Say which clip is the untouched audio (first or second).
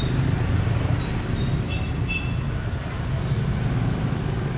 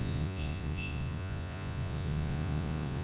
first